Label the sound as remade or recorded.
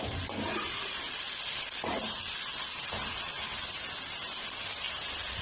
recorded